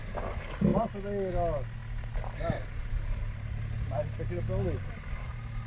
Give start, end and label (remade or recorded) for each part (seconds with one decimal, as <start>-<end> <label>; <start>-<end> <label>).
0.0-5.7 recorded